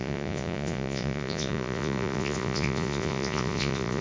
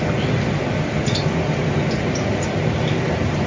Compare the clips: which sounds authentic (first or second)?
second